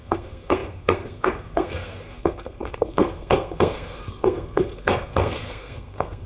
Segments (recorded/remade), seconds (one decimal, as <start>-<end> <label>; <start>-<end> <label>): 0.0-6.3 remade